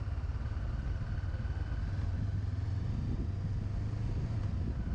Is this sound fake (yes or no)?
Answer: no